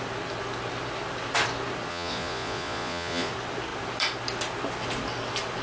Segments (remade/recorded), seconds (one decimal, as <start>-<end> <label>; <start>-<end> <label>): 0.0-1.9 recorded; 1.9-3.3 remade; 3.3-5.6 recorded